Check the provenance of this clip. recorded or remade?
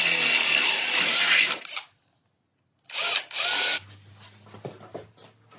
recorded